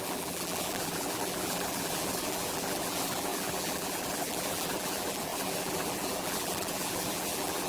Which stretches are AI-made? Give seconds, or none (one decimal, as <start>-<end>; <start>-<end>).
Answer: 0.0-7.7